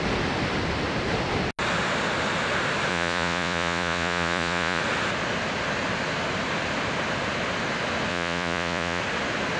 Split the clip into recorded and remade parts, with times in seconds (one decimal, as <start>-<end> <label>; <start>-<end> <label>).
0.0-2.9 recorded; 2.9-4.8 remade; 4.8-8.1 recorded; 8.1-9.0 remade; 9.0-9.6 recorded